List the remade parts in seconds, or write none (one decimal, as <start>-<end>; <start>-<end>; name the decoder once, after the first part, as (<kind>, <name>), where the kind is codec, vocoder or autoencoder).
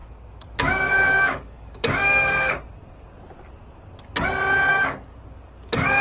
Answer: 0.0-2.5 (codec, DAC); 4.7-6.0